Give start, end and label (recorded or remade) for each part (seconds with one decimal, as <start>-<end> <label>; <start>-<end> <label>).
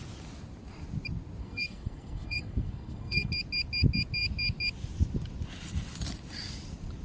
0.0-1.4 recorded; 1.4-3.3 remade; 3.3-7.0 recorded